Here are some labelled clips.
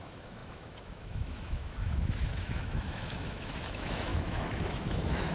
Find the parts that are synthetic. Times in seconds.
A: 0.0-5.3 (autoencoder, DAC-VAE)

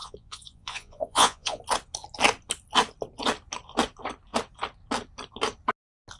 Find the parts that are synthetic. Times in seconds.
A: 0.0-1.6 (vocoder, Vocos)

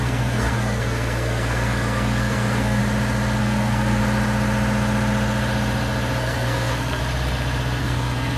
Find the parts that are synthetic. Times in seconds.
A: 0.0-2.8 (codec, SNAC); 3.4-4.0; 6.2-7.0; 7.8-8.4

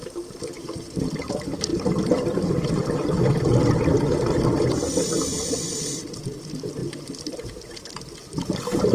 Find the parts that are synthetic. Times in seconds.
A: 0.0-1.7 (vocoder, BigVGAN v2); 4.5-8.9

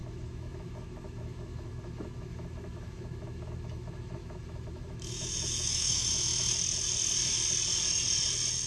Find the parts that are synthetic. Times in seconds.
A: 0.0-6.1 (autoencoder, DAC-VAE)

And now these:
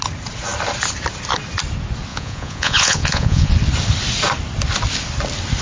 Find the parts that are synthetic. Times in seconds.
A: 2.1-3.5 (vocoder, Vocos)